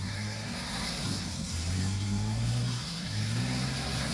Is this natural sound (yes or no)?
no